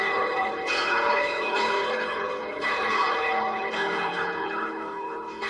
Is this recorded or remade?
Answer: remade